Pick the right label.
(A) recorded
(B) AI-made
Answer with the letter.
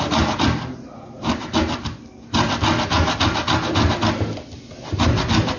A